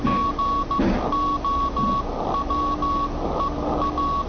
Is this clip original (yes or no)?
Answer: yes